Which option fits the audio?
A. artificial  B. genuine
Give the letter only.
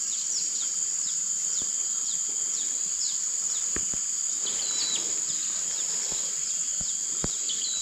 B